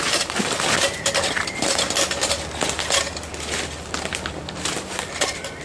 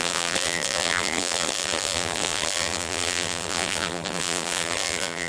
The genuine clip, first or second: first